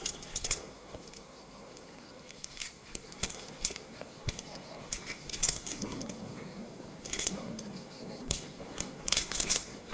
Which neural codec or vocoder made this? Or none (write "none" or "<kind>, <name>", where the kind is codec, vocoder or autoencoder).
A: codec, SNAC